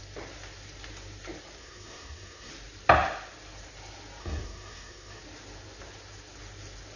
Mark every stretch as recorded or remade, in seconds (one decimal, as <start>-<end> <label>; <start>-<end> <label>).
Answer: 0.0-1.6 recorded; 1.6-2.5 remade; 2.5-4.2 recorded; 4.2-5.2 remade; 5.2-7.0 recorded